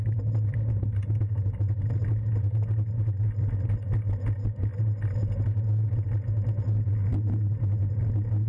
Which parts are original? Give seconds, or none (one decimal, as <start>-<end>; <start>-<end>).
0.0-8.5